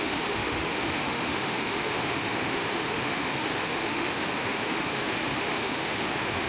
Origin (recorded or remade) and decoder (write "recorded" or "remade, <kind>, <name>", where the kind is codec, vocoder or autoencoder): remade, autoencoder, DAC-VAE